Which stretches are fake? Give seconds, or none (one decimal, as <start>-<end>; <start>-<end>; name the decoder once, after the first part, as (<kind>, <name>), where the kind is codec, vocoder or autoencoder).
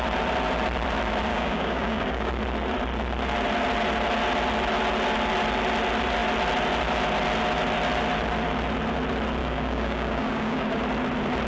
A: 1.3-2.3 (codec, DAC); 9.4-10.8